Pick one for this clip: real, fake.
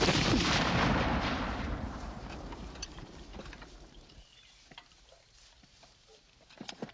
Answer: fake